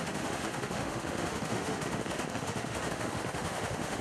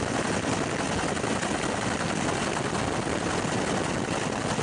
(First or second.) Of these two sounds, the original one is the second